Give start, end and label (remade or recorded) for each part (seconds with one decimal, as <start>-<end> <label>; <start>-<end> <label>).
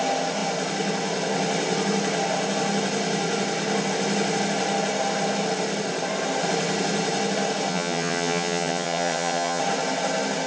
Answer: 0.0-7.7 recorded; 7.7-9.6 remade; 9.6-10.5 recorded